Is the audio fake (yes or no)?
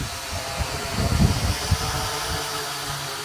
no